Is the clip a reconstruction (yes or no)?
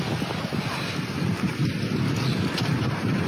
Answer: no